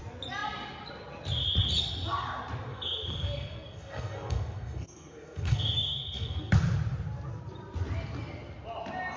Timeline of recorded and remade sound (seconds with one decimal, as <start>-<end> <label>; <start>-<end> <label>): 0.0-2.7 recorded; 2.7-6.5 remade; 6.5-9.2 recorded